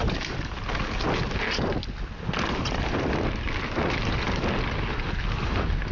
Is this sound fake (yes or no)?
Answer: no